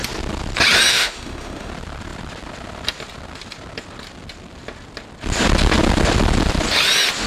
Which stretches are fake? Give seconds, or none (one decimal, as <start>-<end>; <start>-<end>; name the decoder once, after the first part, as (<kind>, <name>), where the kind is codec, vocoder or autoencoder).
0.9-1.7 (autoencoder, DAC-VAE)